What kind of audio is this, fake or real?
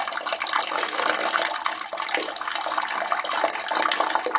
real